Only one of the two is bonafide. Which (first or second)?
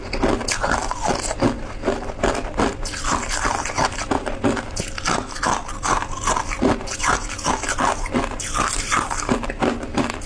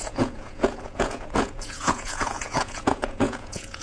first